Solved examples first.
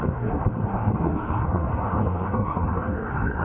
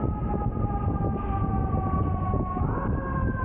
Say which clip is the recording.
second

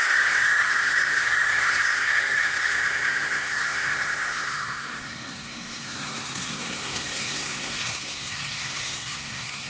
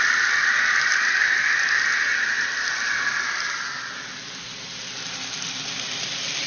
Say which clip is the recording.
second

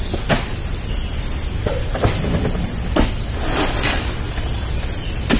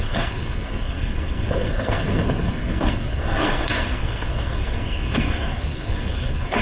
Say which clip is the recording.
first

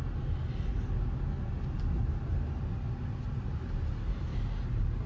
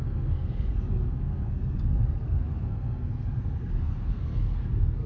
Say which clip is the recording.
first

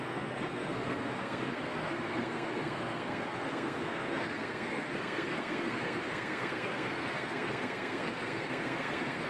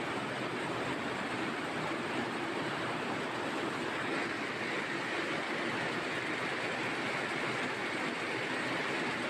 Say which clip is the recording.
second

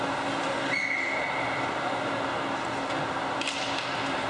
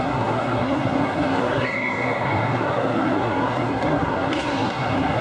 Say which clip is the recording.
first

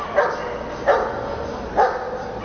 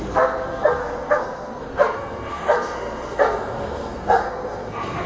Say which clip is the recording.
first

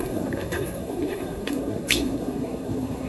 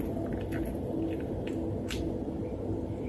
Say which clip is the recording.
second